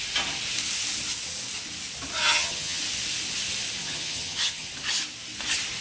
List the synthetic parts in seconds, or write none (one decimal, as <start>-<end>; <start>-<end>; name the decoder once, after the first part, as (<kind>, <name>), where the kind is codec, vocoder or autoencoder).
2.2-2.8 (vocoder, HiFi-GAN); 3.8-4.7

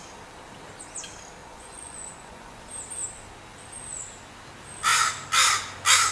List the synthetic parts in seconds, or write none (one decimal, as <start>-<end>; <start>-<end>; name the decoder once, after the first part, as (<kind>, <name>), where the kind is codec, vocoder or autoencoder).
1.4-2.6 (vocoder, Vocos)

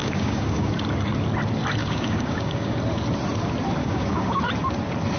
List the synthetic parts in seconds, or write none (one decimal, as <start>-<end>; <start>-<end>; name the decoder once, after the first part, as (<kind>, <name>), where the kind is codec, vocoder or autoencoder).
0.0-0.7 (codec, DAC); 1.8-2.8; 3.8-4.4

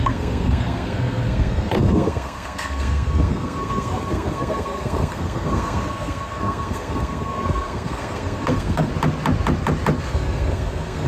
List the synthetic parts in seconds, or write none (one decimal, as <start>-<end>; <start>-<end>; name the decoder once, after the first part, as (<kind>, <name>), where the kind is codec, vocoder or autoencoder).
0.0-8.9 (codec, SNAC); 10.0-11.1

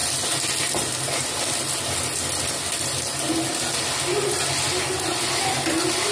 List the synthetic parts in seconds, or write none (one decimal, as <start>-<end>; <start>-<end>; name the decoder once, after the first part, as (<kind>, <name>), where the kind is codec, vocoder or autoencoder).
none

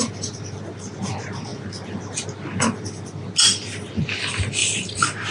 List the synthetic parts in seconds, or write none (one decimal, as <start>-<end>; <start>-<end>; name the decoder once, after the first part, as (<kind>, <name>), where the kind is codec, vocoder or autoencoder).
4.6-5.3 (vocoder, BigVGAN v2)

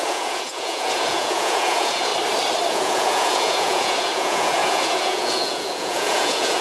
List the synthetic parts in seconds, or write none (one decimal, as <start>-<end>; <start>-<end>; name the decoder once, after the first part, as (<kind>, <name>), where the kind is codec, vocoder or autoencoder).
0.0-2.1 (vocoder, Vocos); 2.7-6.6

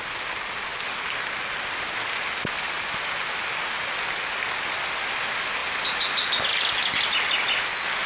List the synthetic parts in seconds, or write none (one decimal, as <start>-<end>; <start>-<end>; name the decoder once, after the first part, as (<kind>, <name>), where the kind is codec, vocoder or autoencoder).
none